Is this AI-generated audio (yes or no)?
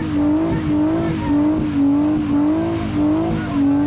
no